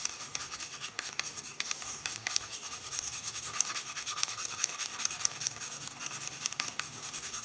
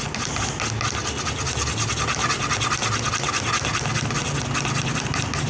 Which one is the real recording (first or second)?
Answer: second